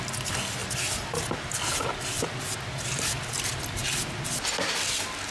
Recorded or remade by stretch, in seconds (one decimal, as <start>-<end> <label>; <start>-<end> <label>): 0.0-5.3 recorded

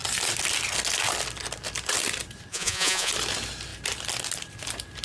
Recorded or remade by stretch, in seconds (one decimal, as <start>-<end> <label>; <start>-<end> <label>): 0.0-2.5 recorded; 2.5-3.1 remade; 3.1-5.0 recorded

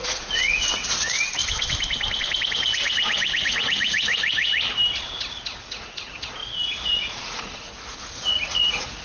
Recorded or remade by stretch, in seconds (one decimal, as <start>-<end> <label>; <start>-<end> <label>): 0.0-1.4 remade; 1.4-3.5 recorded; 3.5-4.5 remade; 4.5-5.1 recorded; 5.1-6.4 remade; 6.4-7.1 recorded; 7.1-9.0 remade

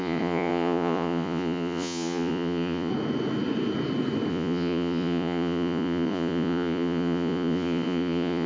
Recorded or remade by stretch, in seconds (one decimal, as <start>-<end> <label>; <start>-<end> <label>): 0.0-2.9 remade; 2.9-4.3 recorded; 4.3-8.5 remade